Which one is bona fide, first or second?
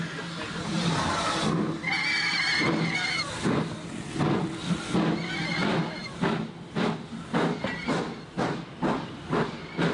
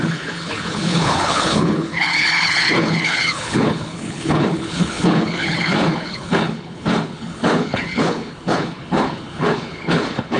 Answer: first